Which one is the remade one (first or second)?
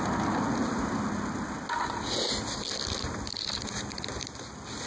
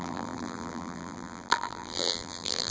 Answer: second